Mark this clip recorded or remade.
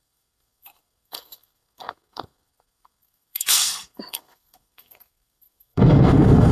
remade